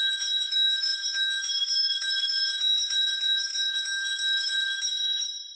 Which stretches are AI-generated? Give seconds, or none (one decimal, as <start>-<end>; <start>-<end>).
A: 0.0-5.5